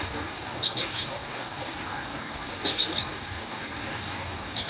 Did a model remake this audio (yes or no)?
yes